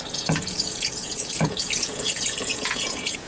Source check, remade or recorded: remade